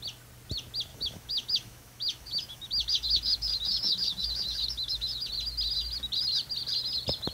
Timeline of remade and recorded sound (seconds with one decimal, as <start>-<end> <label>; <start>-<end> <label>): 0.0-0.9 recorded; 0.9-5.3 remade; 5.3-7.3 recorded